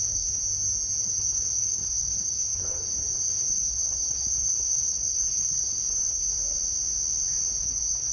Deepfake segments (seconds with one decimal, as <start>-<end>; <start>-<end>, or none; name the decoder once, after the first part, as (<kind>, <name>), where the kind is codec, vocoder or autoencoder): 0.0-0.4 (codec, HILCodec); 1.0-6.3; 7.5-8.1